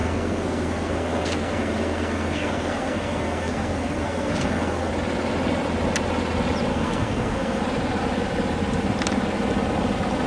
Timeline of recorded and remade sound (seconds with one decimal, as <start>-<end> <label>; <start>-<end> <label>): 0.0-4.9 remade; 4.9-6.7 recorded; 6.7-7.6 remade; 7.6-10.3 recorded